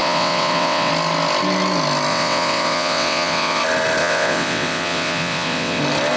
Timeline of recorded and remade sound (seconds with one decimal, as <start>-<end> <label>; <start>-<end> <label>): 0.0-0.9 remade; 0.9-2.1 recorded; 2.1-3.6 remade; 3.6-4.0 recorded; 4.0-5.8 remade; 5.8-6.2 recorded

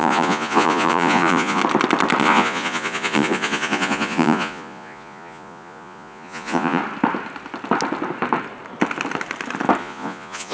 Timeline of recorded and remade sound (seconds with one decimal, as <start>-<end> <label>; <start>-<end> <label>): 0.0-1.6 remade; 1.6-2.2 recorded; 2.2-6.8 remade; 6.8-9.8 recorded; 9.8-10.5 remade